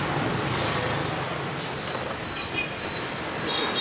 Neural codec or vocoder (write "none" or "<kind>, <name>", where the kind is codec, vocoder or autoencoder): none